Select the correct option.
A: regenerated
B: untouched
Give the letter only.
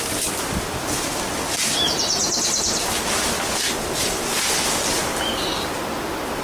A